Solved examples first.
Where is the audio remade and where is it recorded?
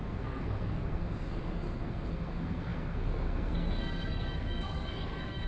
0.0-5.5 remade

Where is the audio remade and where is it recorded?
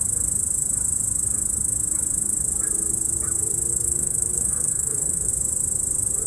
0.0-3.7 recorded; 3.7-5.3 remade; 5.3-6.3 recorded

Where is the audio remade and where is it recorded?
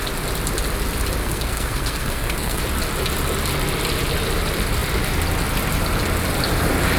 0.0-1.2 recorded; 1.2-2.6 remade; 2.6-7.0 recorded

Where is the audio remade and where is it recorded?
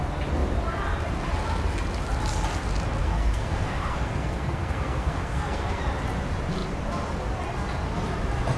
0.0-3.0 recorded; 3.0-5.8 remade; 5.8-8.6 recorded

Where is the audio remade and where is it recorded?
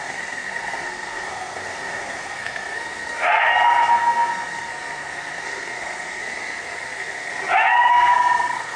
0.0-7.3 remade; 7.3-7.9 recorded; 7.9-8.8 remade